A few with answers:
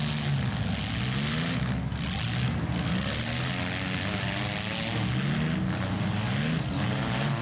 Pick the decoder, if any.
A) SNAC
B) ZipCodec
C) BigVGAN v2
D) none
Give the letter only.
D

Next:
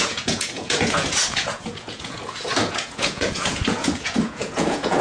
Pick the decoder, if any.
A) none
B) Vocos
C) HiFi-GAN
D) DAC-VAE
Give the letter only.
B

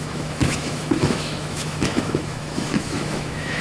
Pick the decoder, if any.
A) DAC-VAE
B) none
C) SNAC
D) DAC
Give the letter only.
A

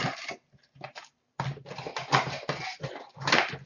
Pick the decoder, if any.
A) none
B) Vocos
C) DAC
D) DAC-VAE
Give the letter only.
A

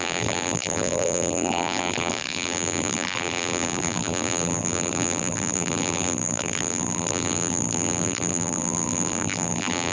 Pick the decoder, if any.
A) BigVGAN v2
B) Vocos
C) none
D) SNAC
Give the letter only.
A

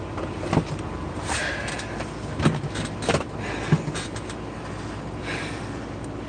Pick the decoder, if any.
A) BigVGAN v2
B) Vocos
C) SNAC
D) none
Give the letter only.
D